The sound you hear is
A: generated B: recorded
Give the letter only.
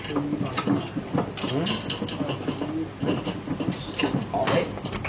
B